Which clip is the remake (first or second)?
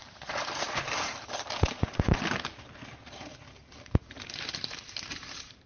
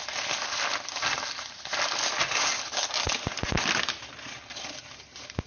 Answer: first